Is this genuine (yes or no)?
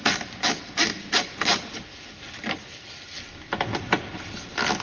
no